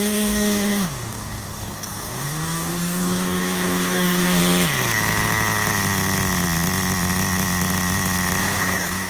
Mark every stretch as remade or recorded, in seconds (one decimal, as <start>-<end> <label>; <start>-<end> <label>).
0.0-4.4 remade; 4.4-8.4 recorded; 8.4-9.1 remade